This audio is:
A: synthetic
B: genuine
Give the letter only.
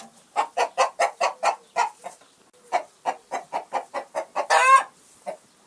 B